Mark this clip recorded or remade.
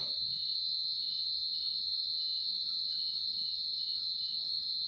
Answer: recorded